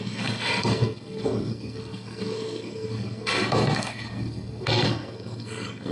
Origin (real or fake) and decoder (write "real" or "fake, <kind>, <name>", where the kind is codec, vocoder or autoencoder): fake, codec, SNAC